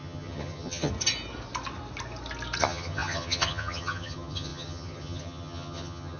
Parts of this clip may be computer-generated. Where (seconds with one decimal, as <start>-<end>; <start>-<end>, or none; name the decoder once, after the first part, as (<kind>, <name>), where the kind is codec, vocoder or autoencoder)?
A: 0.0-0.9 (vocoder, HiFi-GAN); 2.6-6.2